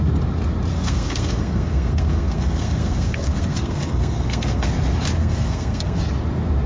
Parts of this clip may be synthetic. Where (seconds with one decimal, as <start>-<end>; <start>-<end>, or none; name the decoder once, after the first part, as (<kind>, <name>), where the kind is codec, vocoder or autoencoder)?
0.7-4.7 (codec, SNAC); 5.2-6.0